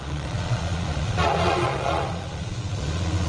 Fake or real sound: fake